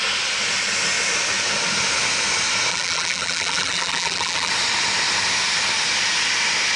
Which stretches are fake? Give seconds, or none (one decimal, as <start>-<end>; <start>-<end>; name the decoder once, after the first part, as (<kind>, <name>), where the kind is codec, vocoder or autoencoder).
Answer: 2.7-4.5 (vocoder, BigVGAN v2)